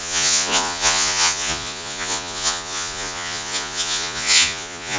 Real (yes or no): no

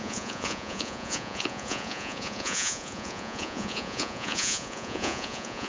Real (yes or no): no